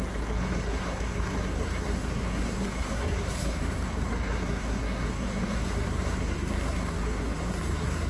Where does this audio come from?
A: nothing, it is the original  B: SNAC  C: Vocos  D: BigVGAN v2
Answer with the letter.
B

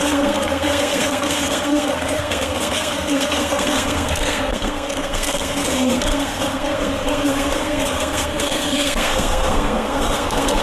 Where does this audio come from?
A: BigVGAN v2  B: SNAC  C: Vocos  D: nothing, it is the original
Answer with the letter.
B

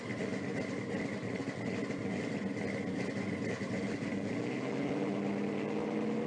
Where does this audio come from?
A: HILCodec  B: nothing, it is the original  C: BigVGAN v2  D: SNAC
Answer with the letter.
B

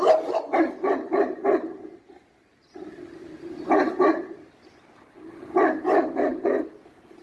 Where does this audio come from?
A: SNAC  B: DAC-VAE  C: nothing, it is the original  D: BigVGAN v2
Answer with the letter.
C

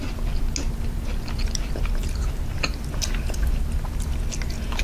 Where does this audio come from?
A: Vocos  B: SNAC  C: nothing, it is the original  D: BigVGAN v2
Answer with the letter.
C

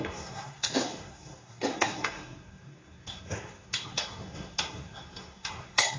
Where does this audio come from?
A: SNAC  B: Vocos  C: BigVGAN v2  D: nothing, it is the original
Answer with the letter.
A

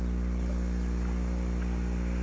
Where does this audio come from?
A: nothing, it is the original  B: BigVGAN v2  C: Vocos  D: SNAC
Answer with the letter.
A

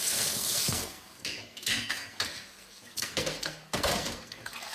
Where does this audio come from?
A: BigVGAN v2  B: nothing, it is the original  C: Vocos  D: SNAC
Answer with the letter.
D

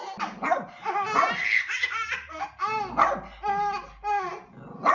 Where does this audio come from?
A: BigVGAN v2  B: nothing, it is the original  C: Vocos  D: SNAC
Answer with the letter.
B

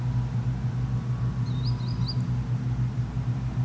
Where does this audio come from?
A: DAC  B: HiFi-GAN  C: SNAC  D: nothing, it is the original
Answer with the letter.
D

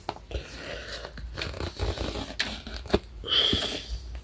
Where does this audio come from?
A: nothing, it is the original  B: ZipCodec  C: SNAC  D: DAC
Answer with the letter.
A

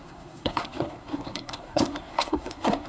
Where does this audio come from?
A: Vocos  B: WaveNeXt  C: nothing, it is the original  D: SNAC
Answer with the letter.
D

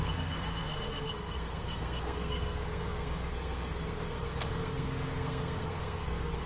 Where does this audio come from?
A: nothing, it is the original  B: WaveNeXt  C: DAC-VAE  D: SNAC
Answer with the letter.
D